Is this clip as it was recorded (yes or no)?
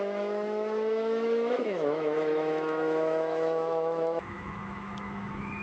no